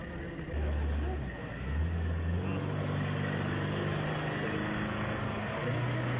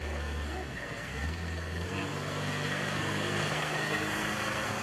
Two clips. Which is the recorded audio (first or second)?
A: first